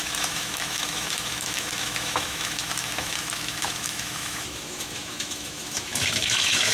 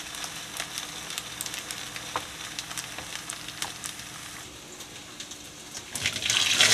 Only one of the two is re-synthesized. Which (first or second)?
first